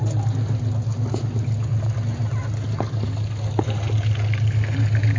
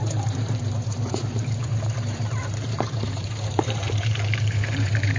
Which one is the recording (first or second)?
first